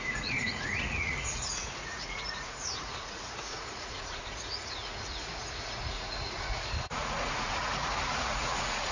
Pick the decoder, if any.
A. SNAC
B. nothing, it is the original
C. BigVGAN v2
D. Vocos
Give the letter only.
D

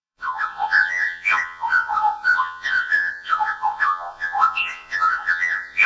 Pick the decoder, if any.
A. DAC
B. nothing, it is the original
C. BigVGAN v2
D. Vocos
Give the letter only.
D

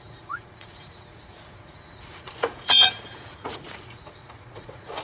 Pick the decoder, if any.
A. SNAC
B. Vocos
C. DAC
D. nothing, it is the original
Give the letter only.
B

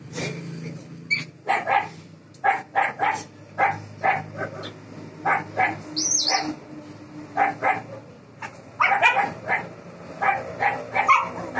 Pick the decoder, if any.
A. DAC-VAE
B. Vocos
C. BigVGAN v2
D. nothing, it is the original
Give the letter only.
D